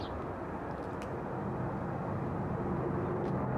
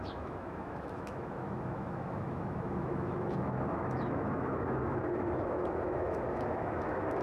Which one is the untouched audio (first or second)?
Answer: first